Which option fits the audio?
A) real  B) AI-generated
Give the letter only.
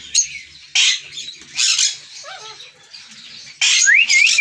A